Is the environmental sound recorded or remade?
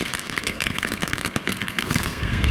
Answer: remade